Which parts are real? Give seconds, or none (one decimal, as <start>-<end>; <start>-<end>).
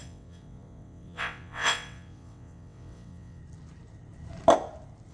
3.4-5.1